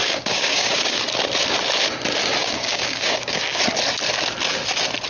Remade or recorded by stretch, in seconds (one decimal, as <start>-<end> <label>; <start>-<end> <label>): 0.0-1.0 remade; 1.0-2.4 recorded; 2.4-3.6 remade; 3.6-5.1 recorded